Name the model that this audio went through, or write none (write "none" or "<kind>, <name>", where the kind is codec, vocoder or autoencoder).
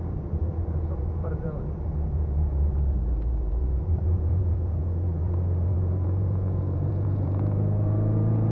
vocoder, Vocos